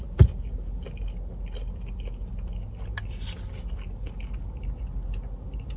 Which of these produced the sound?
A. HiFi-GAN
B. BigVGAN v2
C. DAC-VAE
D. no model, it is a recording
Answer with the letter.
D